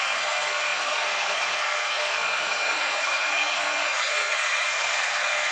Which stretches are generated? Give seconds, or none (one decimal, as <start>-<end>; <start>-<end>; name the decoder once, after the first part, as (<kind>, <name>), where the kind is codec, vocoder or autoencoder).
0.0-5.5 (codec, SNAC)